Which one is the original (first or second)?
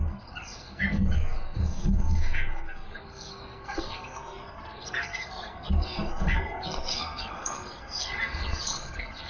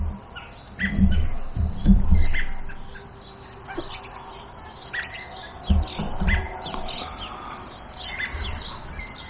second